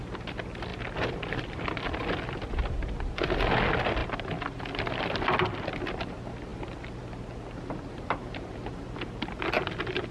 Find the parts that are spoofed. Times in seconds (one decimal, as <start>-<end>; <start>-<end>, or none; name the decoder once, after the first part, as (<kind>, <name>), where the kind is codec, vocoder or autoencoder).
none